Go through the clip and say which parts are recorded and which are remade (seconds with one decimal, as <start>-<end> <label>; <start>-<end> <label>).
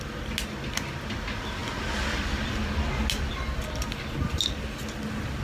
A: 0.0-5.4 recorded